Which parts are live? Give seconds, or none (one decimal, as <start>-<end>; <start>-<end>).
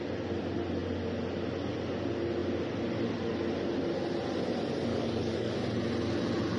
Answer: 0.0-4.9; 5.5-6.6